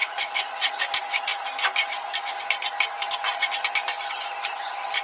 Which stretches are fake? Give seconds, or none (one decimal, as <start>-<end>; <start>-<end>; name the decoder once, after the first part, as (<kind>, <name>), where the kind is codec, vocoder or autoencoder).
0.0-0.8 (vocoder, Vocos)

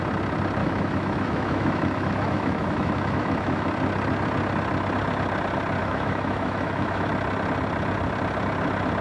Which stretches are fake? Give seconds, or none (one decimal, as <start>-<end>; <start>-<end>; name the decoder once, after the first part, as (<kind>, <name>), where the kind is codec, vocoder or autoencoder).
0.6-3.7 (autoencoder, DAC-VAE); 5.8-7.1

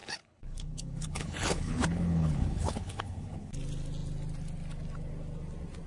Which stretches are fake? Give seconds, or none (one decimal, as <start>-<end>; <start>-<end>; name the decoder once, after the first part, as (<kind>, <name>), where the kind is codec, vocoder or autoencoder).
0.0-3.5 (codec, HILCodec)

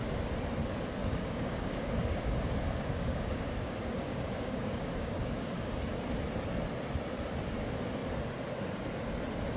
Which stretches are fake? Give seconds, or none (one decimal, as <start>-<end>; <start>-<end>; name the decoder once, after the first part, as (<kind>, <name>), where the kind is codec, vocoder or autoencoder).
1.0-5.7 (codec, DAC)

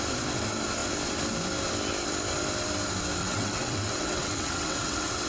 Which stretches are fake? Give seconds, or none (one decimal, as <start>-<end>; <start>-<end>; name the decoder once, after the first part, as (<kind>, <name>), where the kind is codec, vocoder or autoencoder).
3.2-5.3 (vocoder, WaveNeXt)

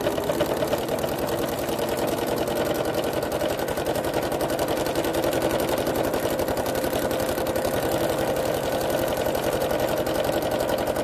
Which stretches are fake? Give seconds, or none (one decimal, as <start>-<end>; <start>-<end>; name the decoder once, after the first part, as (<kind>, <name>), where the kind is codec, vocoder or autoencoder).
none